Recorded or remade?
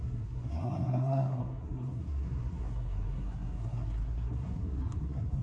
remade